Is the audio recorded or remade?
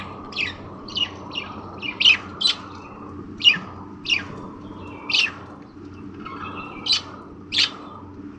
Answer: remade